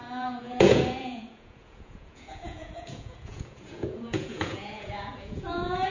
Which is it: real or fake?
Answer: fake